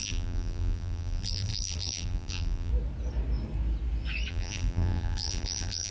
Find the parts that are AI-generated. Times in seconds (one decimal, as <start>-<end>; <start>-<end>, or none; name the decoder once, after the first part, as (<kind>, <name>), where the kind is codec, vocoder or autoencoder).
0.0-2.7 (vocoder, BigVGAN v2); 4.3-5.9